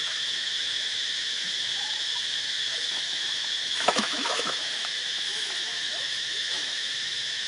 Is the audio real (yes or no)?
no